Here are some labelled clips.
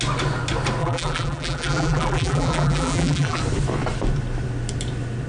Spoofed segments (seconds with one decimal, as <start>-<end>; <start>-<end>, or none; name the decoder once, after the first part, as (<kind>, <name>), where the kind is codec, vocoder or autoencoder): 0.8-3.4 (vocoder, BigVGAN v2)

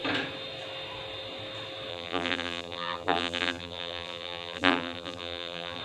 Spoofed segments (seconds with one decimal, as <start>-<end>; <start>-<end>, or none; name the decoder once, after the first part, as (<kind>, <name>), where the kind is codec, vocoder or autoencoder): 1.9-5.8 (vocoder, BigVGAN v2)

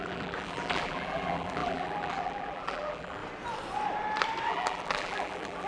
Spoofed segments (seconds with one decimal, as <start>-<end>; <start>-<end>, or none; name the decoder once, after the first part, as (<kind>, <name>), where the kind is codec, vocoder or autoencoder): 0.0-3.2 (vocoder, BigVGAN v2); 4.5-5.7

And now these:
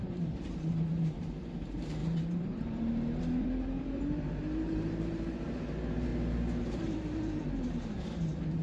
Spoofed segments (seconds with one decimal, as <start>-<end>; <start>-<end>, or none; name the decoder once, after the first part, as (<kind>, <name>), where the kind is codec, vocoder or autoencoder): 0.0-6.1 (vocoder, BigVGAN v2); 6.6-8.6